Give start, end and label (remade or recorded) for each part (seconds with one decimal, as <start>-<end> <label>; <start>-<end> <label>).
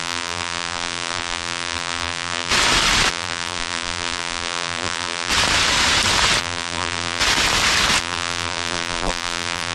0.0-2.5 remade; 2.5-3.1 recorded; 3.1-5.3 remade; 5.3-6.4 recorded; 6.4-7.2 remade; 7.2-8.0 recorded; 8.0-9.7 remade